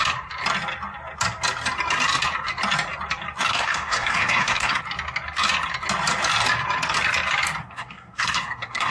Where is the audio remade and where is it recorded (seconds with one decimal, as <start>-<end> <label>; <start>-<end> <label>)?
0.0-3.5 recorded; 3.5-4.8 remade; 4.8-7.6 recorded; 7.6-8.9 remade